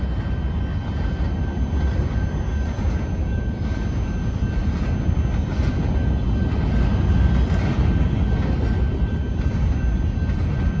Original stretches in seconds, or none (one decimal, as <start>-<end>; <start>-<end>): 0.0-10.8